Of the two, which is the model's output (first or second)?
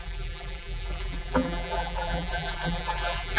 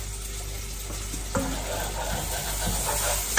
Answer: first